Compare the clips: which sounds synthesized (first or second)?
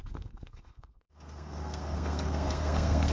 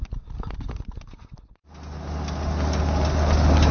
first